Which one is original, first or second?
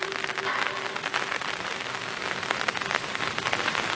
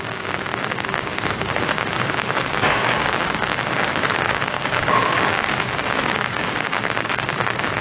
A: first